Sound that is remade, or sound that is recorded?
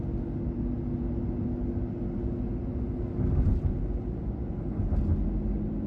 recorded